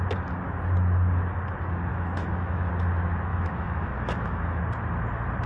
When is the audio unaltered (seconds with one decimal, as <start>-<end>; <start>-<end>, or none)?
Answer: 0.0-1.9; 2.7-3.3; 4.6-5.5